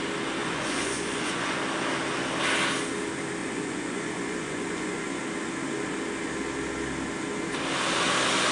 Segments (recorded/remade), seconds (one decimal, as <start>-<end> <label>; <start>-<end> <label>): 0.0-0.4 recorded; 0.4-1.6 remade; 1.6-3.4 recorded; 3.4-5.2 remade; 5.2-8.5 recorded